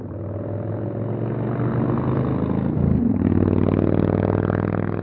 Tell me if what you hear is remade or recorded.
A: recorded